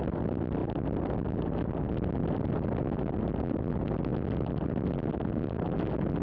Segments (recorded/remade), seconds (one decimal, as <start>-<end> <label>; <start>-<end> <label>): 0.0-6.2 recorded